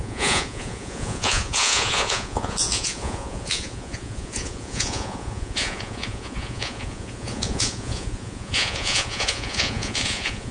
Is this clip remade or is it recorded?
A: remade